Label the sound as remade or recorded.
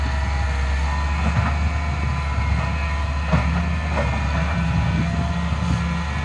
recorded